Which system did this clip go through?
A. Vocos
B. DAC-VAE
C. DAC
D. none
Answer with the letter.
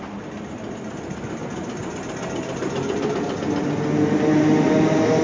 D